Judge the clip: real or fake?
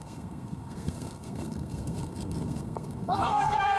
fake